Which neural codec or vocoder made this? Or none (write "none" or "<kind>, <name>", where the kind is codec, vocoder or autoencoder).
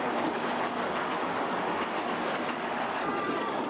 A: codec, DAC